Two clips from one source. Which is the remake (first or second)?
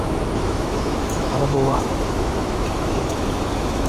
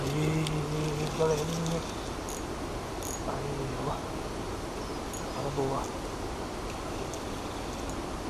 first